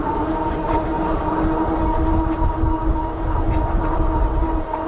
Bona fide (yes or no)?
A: yes